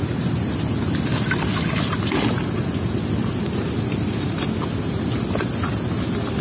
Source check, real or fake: real